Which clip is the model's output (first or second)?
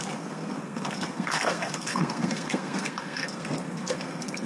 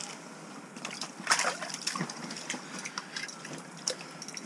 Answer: first